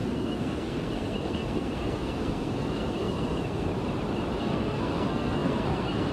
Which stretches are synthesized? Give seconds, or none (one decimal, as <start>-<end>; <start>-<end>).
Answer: 0.0-3.7; 4.4-6.1